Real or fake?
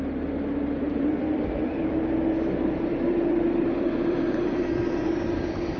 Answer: fake